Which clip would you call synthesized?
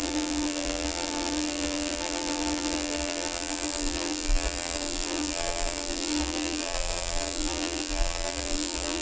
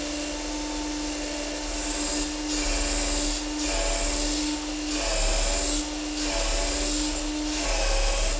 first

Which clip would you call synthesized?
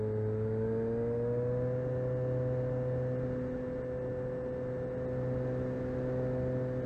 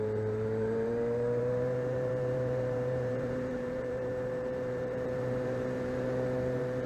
second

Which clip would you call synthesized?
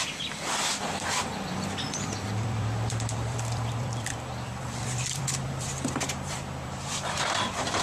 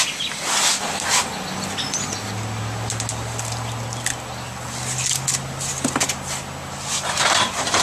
first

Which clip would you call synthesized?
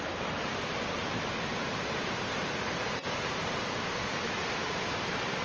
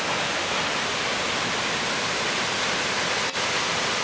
first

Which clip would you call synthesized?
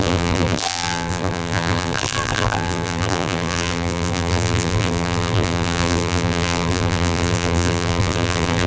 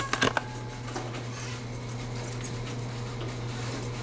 first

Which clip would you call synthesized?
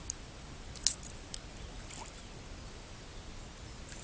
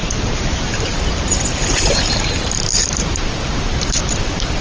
second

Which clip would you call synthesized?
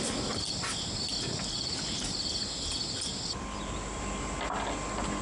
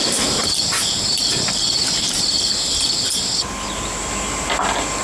second